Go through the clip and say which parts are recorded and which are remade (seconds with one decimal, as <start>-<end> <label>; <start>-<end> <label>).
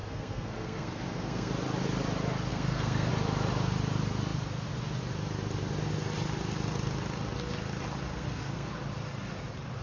0.0-1.5 remade; 1.5-2.5 recorded; 2.5-3.1 remade; 3.1-8.1 recorded; 8.1-8.7 remade; 8.7-9.8 recorded